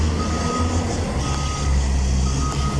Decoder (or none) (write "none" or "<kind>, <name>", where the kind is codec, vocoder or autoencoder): none